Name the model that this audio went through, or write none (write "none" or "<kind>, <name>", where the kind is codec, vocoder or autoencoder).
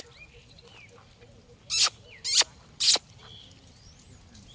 none